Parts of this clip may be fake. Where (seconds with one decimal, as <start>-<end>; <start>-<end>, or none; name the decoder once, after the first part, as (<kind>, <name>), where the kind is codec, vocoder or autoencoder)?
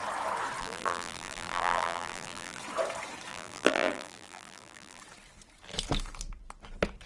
0.6-2.6 (vocoder, BigVGAN v2); 3.3-5.0